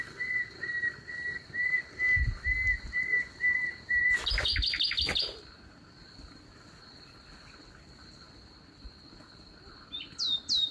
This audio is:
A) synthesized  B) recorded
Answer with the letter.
B